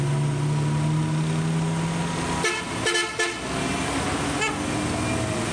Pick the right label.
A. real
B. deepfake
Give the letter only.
A